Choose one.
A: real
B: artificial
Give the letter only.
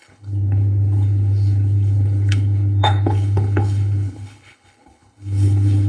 B